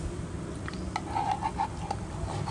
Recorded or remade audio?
recorded